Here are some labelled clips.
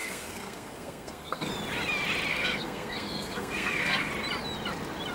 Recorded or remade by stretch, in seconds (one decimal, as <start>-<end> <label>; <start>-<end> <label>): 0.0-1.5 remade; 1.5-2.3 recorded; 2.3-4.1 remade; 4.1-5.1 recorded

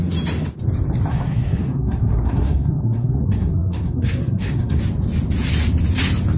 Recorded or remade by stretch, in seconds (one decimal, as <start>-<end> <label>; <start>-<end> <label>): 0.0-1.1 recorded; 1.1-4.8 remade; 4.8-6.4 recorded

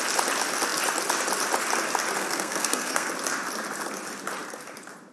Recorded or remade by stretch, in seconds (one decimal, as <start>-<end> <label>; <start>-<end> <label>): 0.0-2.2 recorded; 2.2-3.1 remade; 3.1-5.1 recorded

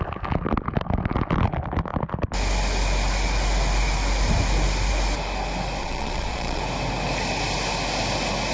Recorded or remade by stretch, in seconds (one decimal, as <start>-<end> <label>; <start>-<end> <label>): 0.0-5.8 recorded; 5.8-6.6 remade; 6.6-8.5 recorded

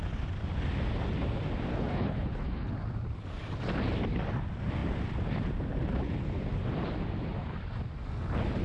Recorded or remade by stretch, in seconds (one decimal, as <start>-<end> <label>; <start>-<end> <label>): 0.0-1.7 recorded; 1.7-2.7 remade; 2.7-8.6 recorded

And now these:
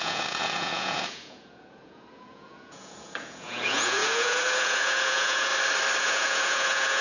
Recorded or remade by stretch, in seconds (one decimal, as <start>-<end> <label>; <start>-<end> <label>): 0.0-5.5 remade; 5.5-6.0 recorded; 6.0-7.0 remade

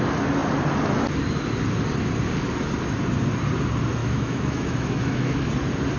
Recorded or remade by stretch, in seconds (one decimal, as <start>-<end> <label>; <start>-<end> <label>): 0.0-4.0 recorded; 4.0-5.4 remade; 5.4-6.0 recorded